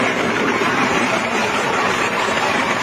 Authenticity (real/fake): fake